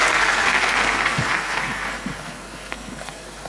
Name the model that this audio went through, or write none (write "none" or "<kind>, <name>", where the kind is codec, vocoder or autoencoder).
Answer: codec, SNAC